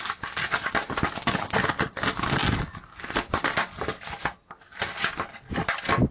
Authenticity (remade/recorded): recorded